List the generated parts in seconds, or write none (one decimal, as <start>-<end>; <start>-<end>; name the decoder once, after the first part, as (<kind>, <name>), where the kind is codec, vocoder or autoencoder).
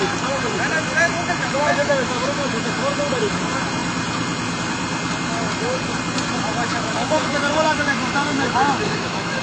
1.4-2.5 (autoencoder, DAC-VAE); 6.7-9.4